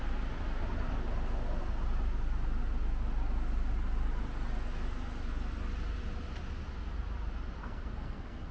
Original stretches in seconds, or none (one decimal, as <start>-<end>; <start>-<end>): 0.0-7.6